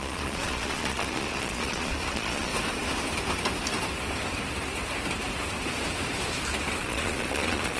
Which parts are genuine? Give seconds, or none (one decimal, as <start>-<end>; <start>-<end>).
2.5-6.8